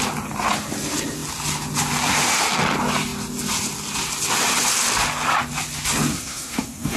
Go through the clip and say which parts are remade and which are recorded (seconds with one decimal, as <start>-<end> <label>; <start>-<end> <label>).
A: 0.0-6.1 recorded; 6.1-7.0 remade